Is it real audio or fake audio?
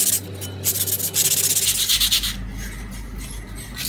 real